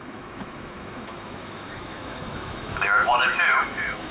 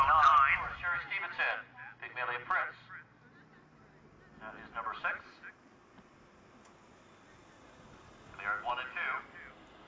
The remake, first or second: first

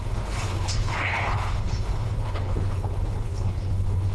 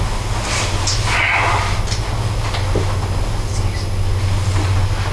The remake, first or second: first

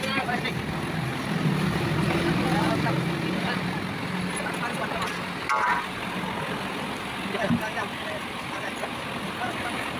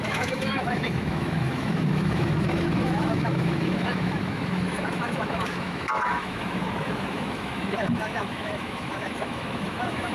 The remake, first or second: second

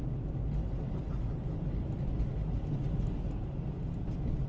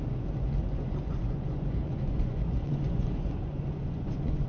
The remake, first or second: second